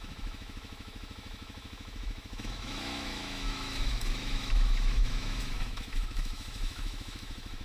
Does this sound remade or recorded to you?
remade